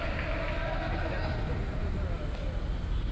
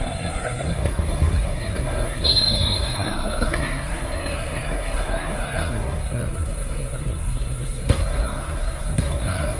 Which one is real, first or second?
first